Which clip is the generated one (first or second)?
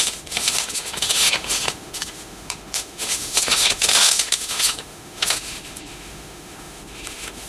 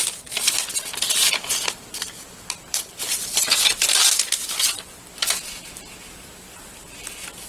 first